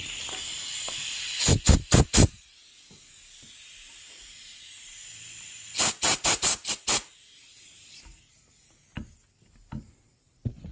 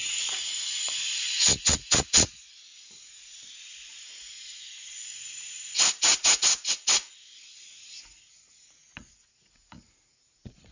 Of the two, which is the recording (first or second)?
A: first